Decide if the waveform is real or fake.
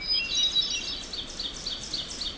real